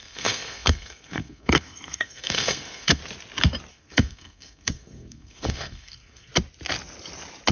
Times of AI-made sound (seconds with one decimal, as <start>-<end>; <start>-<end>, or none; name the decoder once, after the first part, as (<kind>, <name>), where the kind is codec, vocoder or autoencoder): 0.0-3.0 (codec, SNAC); 3.7-6.3